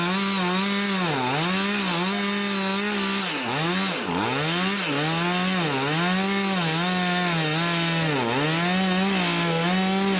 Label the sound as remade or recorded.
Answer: recorded